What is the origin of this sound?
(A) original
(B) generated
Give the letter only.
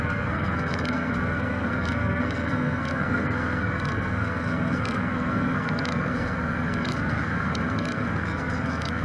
B